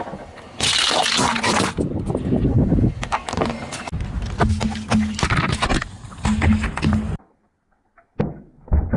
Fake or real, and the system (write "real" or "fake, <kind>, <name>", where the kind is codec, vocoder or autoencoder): real